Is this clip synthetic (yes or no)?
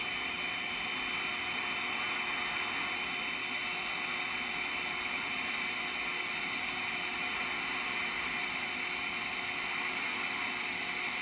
no